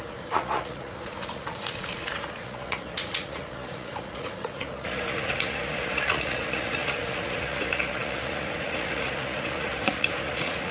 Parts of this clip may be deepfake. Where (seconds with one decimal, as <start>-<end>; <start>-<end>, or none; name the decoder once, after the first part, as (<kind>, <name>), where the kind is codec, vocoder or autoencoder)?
0.0-10.7 (vocoder, Vocos)